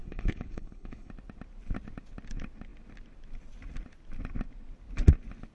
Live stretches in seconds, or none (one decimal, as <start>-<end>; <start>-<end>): 1.1-5.5

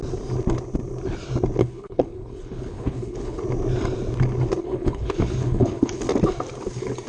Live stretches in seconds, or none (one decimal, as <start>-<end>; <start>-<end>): 0.0-1.6; 3.4-4.6; 6.0-7.1

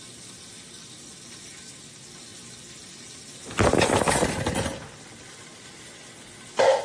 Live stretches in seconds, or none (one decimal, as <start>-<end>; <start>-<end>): 0.0-6.8

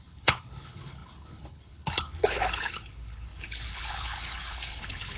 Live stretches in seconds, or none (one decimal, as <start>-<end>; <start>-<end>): none

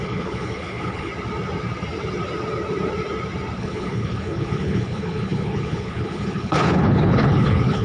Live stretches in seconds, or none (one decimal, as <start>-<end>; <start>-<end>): 1.1-3.6

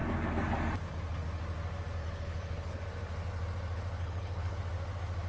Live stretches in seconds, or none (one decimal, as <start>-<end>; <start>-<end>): 0.0-2.0; 2.8-4.0; 4.6-5.3

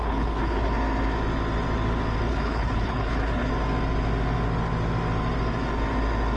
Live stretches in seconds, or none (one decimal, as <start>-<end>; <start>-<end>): 0.7-2.3; 3.5-6.4